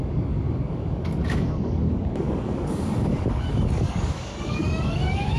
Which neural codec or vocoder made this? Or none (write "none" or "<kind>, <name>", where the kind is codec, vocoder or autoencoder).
codec, DAC